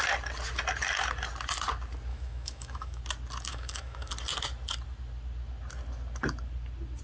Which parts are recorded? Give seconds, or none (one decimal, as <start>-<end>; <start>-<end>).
0.0-2.1; 3.0-3.5; 4.1-7.0